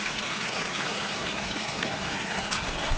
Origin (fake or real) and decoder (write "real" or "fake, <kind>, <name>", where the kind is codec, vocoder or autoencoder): fake, codec, SNAC